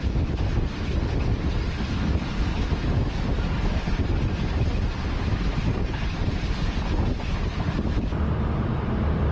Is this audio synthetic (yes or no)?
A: no